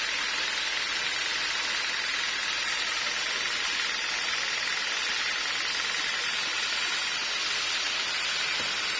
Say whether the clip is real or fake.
real